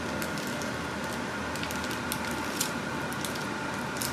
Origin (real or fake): real